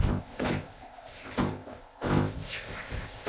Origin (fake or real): fake